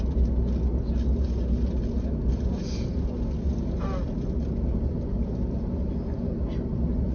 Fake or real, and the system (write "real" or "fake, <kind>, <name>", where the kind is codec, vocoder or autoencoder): real